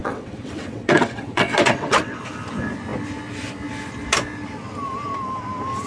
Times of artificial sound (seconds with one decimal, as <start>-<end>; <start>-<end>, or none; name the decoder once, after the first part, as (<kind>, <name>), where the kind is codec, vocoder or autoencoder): 0.0-2.2 (vocoder, WaveNeXt)